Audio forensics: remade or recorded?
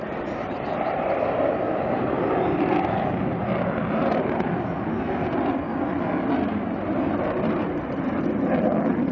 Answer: recorded